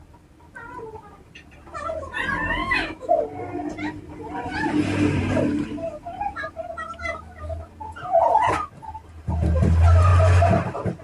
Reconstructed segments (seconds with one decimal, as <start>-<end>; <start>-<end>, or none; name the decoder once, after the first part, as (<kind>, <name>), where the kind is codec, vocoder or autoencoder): 2.6-3.2 (autoencoder, DAC-VAE)